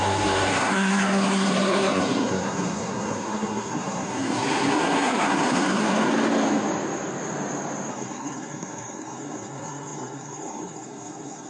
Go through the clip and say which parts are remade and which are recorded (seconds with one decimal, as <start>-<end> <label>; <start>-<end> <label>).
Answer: 0.0-6.1 remade; 6.1-7.9 recorded; 7.9-11.5 remade